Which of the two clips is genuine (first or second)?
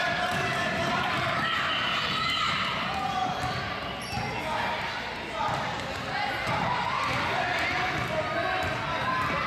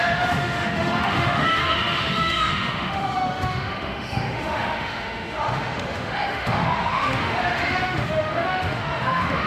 first